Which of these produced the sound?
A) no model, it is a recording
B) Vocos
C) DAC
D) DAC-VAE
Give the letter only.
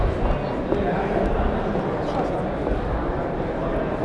A